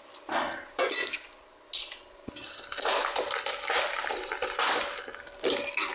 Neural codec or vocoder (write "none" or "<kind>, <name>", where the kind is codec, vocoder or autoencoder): none